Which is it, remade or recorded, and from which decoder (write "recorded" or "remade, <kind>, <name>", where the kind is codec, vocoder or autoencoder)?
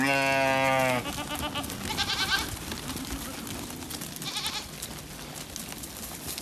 recorded